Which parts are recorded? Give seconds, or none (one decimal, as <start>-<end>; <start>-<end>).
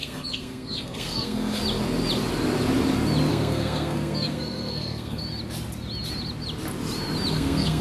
1.6-3.3; 5.2-7.3